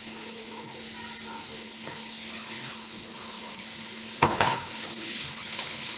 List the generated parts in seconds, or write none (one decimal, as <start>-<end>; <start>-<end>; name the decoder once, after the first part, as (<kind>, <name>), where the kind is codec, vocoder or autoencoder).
0.0-0.8 (codec, HILCodec); 1.3-6.0